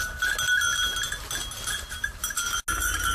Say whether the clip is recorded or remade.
recorded